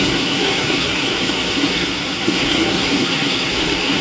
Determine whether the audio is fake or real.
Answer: fake